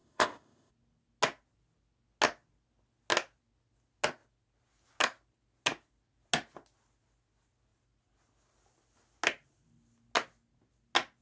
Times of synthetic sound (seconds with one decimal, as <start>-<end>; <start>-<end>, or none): 0.0-0.7